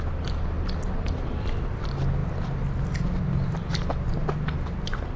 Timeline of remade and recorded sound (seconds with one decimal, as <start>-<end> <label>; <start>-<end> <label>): 0.0-1.2 recorded; 1.2-1.7 remade; 1.7-2.2 recorded; 2.2-2.8 remade; 2.8-5.2 recorded